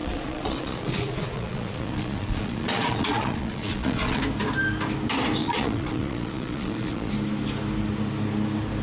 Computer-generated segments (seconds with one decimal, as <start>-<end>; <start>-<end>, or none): 0.0-4.2; 5.4-7.1